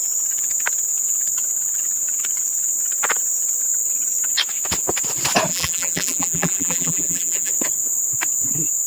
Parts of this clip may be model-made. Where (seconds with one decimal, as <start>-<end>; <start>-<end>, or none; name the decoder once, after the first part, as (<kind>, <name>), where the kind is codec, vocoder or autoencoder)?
5.5-7.5 (vocoder, BigVGAN v2)